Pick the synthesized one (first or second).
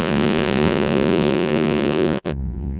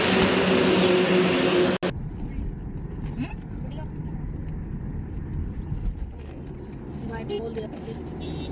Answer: first